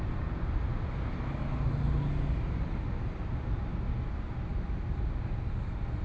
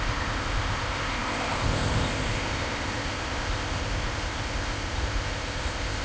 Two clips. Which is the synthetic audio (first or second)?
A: second